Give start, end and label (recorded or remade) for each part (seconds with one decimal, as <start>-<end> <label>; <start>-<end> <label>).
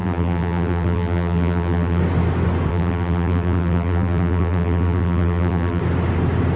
0.0-2.0 remade; 2.0-2.7 recorded; 2.7-5.8 remade; 5.8-6.6 recorded